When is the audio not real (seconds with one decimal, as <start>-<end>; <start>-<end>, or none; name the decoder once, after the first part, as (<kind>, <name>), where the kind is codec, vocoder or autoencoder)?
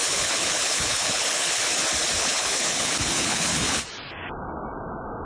0.0-1.6 (codec, HILCodec); 2.2-3.8